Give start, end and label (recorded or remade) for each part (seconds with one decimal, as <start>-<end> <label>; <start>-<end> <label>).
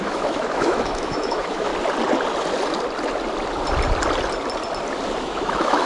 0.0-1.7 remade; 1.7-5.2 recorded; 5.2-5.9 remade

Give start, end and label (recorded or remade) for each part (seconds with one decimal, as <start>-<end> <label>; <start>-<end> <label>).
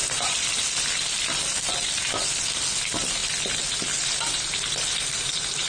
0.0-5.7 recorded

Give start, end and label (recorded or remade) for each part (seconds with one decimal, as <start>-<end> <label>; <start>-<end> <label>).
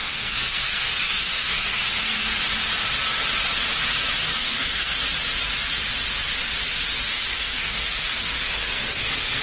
0.0-2.4 remade; 2.4-4.3 recorded; 4.3-5.0 remade; 5.0-7.1 recorded; 7.1-9.4 remade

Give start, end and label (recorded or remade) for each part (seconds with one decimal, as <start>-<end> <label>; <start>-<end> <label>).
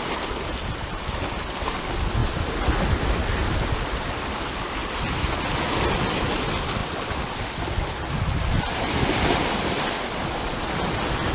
0.0-11.3 recorded